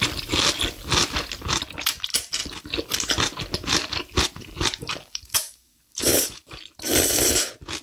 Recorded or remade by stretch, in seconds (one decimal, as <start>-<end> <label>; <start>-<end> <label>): 0.0-4.8 recorded; 4.8-6.6 remade; 6.6-7.8 recorded